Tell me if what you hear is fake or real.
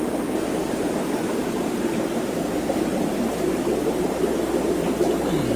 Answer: real